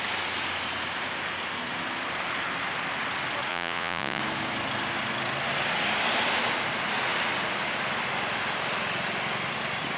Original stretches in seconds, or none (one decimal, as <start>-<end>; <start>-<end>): 0.0-3.5; 4.2-10.0